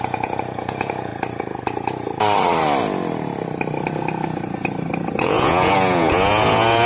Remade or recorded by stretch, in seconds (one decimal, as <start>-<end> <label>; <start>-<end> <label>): 0.0-1.1 remade; 1.1-5.2 recorded; 5.2-6.9 remade